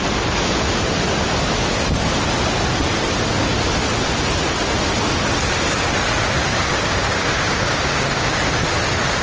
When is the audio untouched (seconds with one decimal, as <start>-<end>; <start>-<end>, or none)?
0.0-6.5; 8.4-9.2